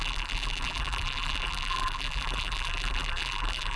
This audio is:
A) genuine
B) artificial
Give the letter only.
B